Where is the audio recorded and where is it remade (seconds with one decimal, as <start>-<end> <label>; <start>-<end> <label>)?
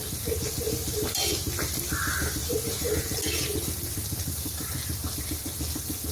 0.0-4.3 recorded; 4.3-5.3 remade; 5.3-6.1 recorded